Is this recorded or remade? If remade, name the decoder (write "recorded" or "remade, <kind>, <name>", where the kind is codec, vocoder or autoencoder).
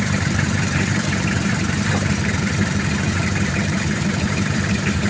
remade, vocoder, BigVGAN v2